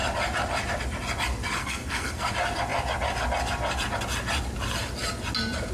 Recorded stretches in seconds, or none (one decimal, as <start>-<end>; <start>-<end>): 0.0-1.6; 2.3-5.7